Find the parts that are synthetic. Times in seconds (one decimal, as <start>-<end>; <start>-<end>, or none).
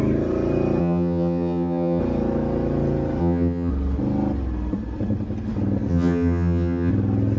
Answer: 0.8-2.0; 3.2-3.7; 5.9-6.9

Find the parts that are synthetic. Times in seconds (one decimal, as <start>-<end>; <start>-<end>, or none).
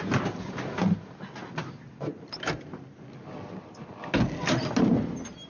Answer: none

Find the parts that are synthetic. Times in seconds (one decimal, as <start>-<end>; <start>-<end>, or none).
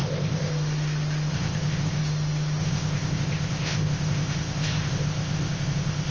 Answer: 0.0-0.5; 1.3-2.0; 2.6-6.1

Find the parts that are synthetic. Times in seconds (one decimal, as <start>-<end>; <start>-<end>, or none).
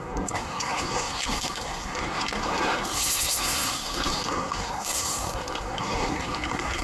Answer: 0.0-6.8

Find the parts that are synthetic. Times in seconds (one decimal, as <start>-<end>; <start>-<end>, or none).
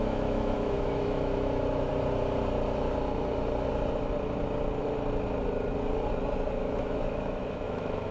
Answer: 0.0-1.9; 6.5-8.1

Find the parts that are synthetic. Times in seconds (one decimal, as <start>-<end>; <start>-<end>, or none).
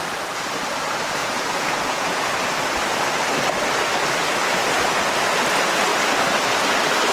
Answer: 1.2-2.3; 4.4-5.1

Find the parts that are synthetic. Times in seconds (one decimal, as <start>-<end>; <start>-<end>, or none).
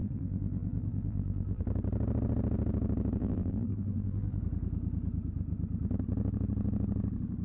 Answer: 0.0-1.6; 3.2-4.4